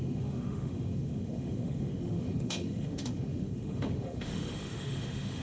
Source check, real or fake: fake